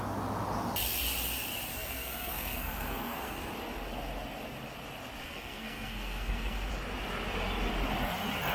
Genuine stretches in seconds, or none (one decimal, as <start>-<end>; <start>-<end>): 0.0-1.7; 3.4-5.2; 6.7-8.5